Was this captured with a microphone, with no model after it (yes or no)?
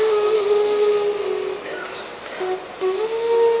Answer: yes